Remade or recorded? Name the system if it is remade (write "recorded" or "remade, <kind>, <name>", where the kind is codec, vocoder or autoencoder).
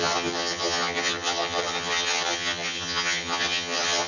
remade, vocoder, HiFi-GAN